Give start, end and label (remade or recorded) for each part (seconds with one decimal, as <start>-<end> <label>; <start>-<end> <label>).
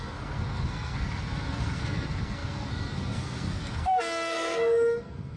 0.0-5.4 remade